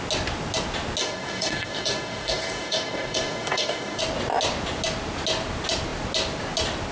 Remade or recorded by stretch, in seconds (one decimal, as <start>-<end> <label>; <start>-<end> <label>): 0.0-1.0 recorded; 1.0-4.0 remade; 4.0-6.9 recorded